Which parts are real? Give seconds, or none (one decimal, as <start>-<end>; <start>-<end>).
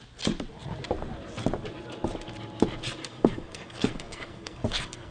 0.0-3.0